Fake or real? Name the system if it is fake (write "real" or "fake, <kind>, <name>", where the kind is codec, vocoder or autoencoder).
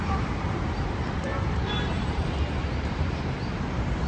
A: fake, vocoder, BigVGAN v2